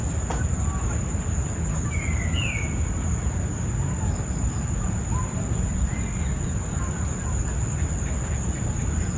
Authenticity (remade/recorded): recorded